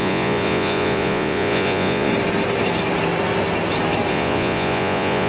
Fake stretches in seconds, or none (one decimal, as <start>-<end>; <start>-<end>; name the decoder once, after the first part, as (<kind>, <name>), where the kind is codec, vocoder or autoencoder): 0.0-2.1 (vocoder, Vocos); 4.1-5.3